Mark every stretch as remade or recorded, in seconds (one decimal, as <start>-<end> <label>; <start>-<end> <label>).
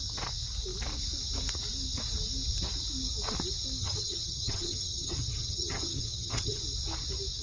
0.0-3.8 recorded; 3.8-6.6 remade; 6.6-7.4 recorded